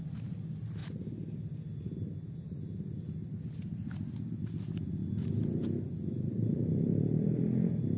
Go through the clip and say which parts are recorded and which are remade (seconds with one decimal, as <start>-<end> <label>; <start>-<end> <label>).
0.0-8.0 recorded